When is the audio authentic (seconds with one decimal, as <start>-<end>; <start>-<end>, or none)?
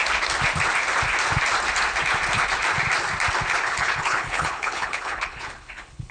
0.0-3.7